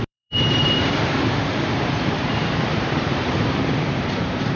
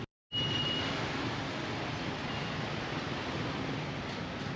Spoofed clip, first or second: first